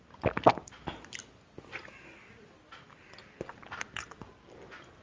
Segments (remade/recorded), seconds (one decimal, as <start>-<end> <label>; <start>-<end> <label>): 0.0-5.0 recorded